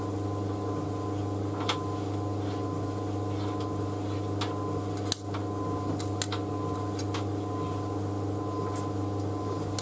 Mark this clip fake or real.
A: real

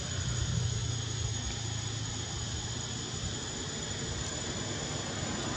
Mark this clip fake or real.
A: real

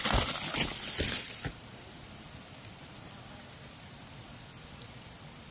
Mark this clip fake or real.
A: fake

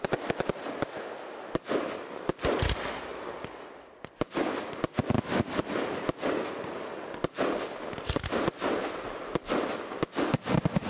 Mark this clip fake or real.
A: real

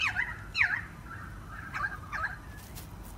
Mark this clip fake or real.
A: real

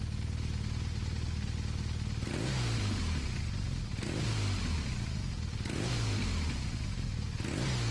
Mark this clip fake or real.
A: real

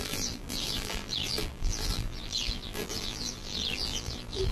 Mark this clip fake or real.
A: fake